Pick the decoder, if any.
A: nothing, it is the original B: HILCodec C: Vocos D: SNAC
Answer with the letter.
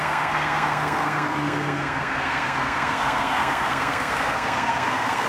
D